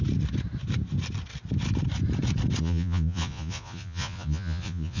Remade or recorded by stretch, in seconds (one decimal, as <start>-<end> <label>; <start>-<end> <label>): 0.0-2.6 recorded; 2.6-5.0 remade